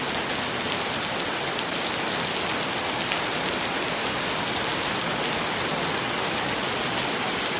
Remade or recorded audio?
recorded